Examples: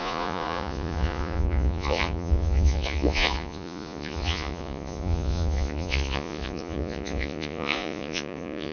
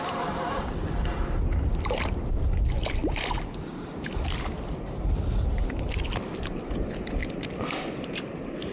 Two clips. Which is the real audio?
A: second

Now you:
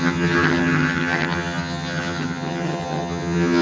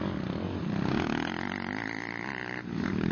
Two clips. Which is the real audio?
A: second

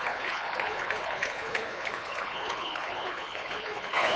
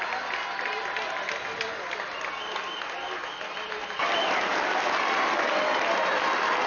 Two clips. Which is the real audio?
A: second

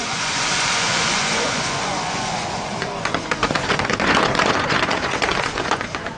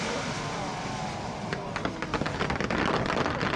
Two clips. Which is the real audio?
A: second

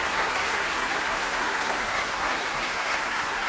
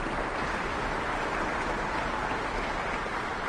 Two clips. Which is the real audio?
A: second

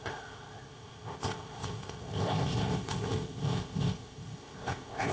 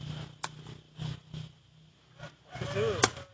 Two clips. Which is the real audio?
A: second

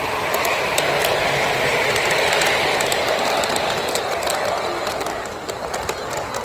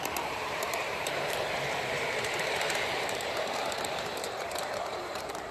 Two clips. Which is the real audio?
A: first